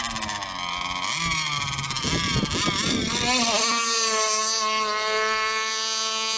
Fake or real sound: real